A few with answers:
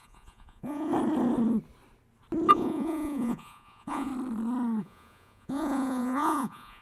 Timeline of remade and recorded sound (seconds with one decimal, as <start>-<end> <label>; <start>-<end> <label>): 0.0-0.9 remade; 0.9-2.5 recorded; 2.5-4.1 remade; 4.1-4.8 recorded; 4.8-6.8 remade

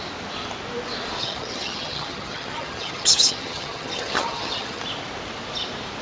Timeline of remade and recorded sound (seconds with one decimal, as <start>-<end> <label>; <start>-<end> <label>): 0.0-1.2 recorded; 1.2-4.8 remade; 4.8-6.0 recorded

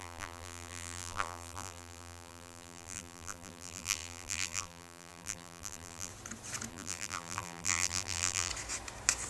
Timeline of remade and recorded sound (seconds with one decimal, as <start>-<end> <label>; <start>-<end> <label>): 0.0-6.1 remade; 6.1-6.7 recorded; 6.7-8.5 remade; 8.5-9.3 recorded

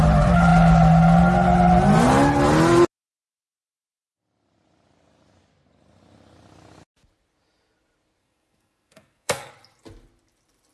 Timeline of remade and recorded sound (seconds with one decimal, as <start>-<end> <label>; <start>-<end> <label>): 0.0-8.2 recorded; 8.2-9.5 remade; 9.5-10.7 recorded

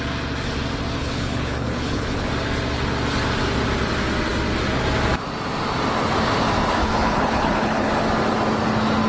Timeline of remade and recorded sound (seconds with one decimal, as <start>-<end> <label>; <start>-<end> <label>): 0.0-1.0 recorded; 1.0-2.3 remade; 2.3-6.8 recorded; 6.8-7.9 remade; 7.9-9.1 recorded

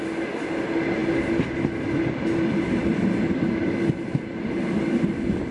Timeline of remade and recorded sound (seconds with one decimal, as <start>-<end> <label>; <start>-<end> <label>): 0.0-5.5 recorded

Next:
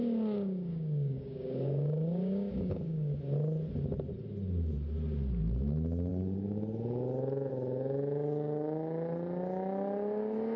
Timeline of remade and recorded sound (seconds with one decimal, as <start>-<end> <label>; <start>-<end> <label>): 0.0-3.2 remade; 3.2-10.6 recorded